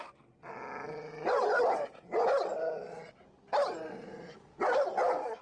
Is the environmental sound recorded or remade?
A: recorded